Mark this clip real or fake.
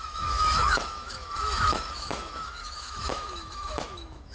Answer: fake